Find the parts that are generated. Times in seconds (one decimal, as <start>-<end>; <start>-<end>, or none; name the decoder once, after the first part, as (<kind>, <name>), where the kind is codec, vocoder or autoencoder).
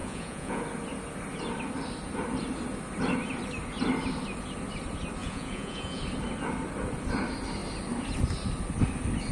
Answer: 0.0-0.6 (vocoder, Vocos); 5.2-6.0